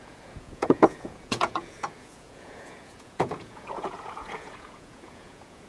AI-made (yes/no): yes